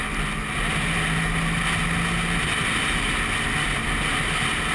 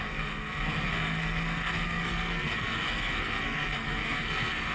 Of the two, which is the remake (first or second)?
second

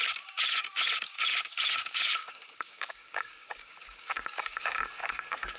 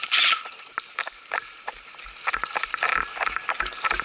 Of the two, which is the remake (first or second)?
first